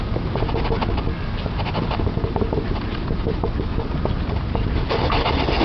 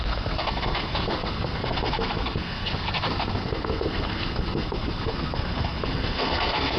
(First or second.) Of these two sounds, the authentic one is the first